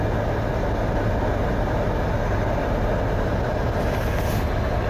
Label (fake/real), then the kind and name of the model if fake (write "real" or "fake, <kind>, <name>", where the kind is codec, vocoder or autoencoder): real